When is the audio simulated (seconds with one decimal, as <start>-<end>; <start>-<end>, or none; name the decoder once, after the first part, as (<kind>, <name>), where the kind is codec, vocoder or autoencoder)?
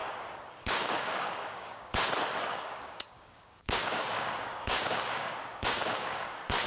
0.5-1.9 (codec, DAC); 2.5-6.7